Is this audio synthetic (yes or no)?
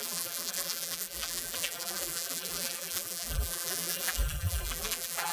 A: yes